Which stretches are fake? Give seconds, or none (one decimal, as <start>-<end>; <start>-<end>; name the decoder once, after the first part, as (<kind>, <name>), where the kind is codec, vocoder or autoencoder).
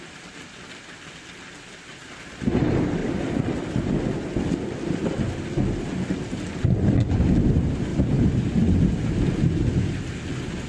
3.0-3.9 (vocoder, BigVGAN v2); 7.9-8.4